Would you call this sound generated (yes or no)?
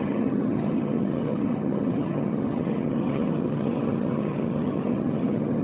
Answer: yes